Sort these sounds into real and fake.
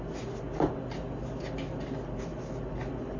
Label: real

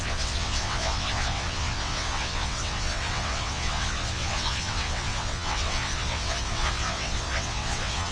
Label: fake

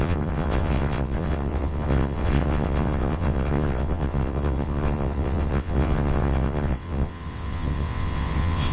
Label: fake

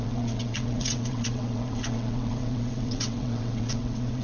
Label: fake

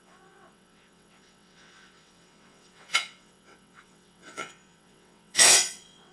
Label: fake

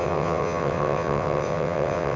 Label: fake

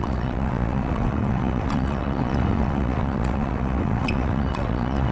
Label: fake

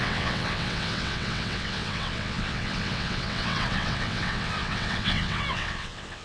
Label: fake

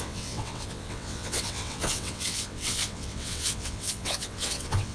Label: fake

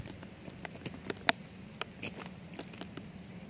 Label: real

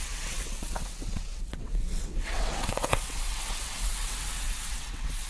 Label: fake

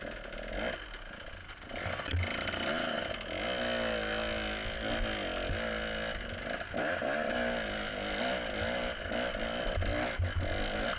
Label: real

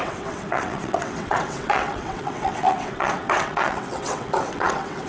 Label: fake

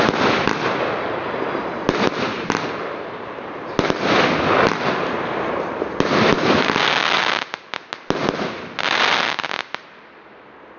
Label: real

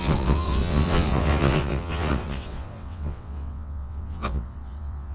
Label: fake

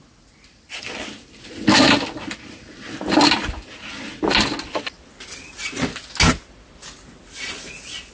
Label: real